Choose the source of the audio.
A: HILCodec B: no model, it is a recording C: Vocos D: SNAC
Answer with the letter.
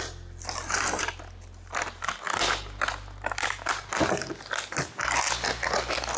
B